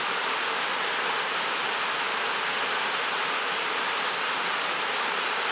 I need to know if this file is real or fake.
real